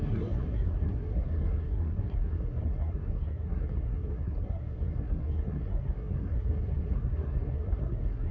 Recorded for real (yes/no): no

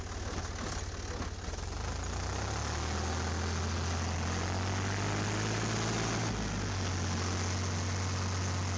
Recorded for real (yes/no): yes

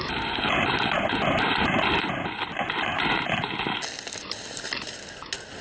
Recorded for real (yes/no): yes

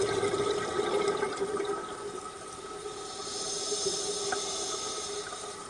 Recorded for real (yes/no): no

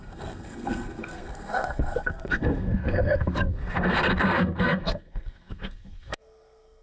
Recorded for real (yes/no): no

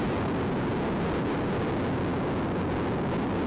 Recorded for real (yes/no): yes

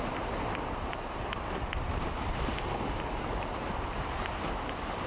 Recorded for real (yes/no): no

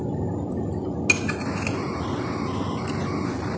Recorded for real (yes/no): yes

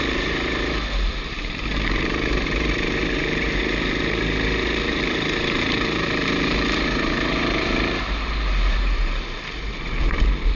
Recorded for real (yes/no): no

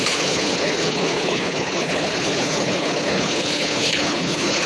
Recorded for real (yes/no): no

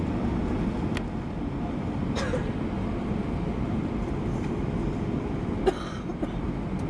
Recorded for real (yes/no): yes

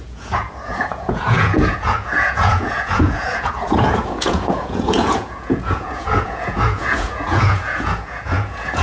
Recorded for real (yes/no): no